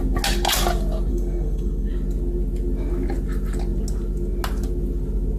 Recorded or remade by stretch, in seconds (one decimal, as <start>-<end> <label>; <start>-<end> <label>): 0.0-1.1 recorded; 1.1-1.9 remade; 1.9-5.4 recorded